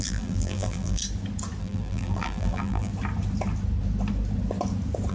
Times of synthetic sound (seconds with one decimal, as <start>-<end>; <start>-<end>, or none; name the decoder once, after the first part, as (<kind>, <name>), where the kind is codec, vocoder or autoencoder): 0.0-1.0 (vocoder, BigVGAN v2); 1.6-2.9